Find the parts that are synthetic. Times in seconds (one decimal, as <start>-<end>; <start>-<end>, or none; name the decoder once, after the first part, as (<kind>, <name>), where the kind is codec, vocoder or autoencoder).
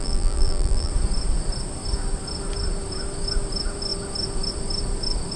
0.0-0.9 (vocoder, BigVGAN v2)